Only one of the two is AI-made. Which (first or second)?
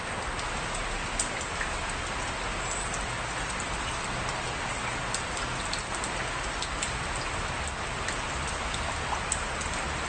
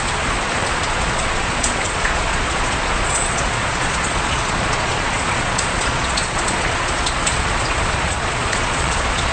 second